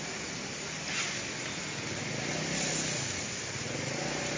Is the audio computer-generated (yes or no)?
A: no